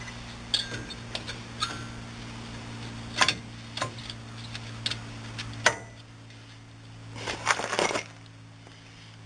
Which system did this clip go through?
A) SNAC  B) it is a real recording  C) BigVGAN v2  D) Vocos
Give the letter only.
B